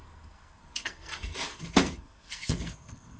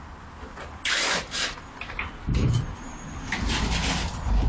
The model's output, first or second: first